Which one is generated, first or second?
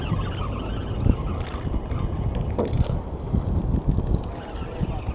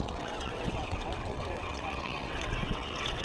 second